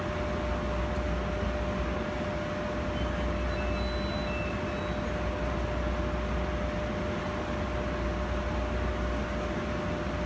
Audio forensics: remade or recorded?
recorded